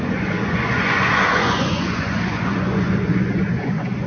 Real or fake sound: fake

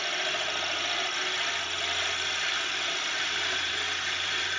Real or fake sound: real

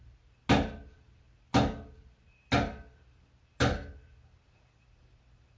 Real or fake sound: real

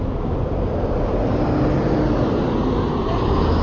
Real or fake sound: real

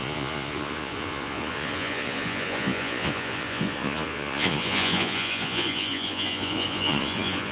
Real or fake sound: fake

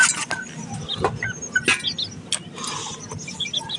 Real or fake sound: real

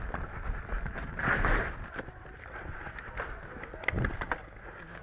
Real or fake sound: real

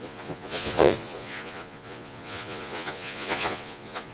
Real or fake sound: fake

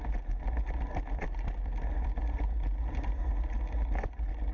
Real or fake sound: real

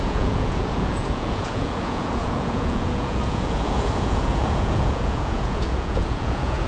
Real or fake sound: fake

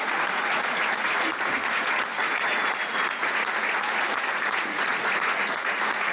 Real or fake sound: fake